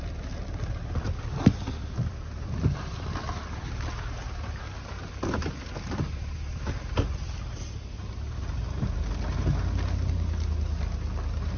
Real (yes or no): yes